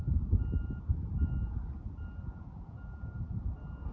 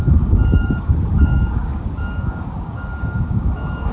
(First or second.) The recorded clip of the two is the first